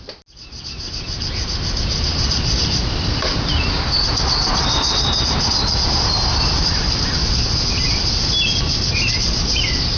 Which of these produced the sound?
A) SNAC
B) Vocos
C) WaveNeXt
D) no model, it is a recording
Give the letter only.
D